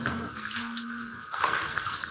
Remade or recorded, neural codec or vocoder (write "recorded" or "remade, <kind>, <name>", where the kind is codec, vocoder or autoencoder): remade, codec, SNAC